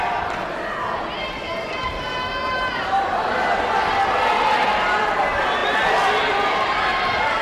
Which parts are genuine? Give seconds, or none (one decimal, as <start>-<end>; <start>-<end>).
0.0-7.4